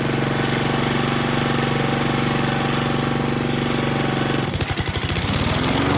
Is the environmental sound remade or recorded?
recorded